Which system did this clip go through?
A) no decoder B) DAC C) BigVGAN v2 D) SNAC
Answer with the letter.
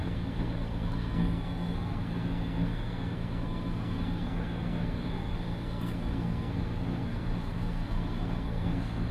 D